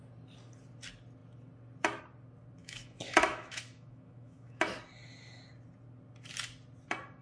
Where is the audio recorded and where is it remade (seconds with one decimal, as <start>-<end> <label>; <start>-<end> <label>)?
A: 0.0-2.6 recorded; 2.6-4.6 remade; 4.6-7.2 recorded